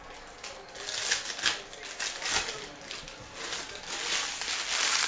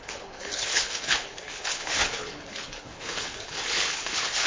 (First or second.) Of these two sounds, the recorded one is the first